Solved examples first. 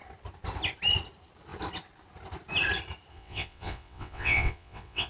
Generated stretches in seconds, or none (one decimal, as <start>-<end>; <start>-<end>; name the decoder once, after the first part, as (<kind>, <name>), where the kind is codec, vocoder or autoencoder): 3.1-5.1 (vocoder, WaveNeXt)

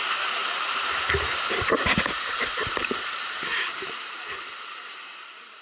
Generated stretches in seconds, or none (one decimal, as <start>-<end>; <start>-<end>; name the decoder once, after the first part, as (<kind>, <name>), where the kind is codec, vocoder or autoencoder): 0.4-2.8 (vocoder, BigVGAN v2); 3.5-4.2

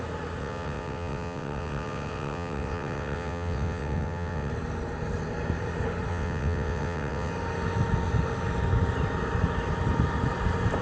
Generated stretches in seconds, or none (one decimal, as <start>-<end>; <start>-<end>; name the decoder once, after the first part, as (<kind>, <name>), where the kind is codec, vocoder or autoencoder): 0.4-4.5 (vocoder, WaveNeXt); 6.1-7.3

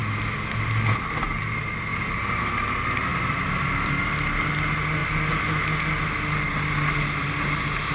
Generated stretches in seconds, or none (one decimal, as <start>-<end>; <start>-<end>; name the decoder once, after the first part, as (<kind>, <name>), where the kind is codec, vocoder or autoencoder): 1.9-2.4 (vocoder, BigVGAN v2); 3.1-4.0

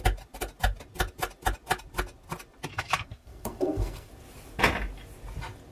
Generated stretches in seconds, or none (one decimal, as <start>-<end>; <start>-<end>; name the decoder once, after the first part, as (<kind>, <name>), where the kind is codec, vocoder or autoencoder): 2.7-4.1 (codec, SNAC)

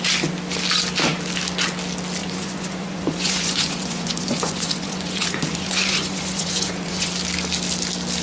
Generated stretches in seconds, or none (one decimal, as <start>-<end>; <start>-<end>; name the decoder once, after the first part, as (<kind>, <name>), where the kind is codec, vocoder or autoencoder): 2.2-7.1 (vocoder, Vocos)